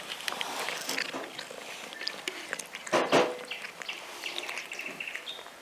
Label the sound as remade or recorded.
recorded